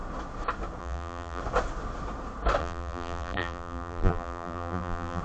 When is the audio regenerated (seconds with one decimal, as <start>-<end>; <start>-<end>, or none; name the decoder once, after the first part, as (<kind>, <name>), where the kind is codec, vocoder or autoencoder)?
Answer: 0.8-1.4 (vocoder, BigVGAN v2); 2.6-5.2